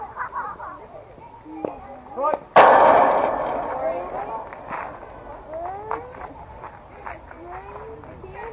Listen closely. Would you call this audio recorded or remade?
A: recorded